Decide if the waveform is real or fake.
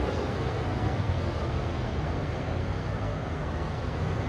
fake